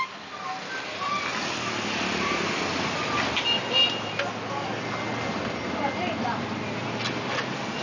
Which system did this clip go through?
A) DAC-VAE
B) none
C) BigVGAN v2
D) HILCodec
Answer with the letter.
B